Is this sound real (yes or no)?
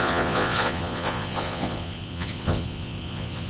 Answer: no